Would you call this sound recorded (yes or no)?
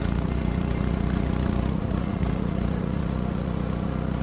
no